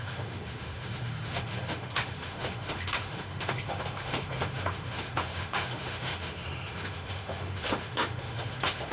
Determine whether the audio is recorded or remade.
remade